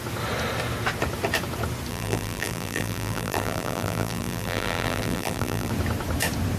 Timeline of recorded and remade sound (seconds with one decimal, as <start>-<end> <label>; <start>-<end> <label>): 0.0-1.9 recorded; 1.9-5.7 remade; 5.7-6.6 recorded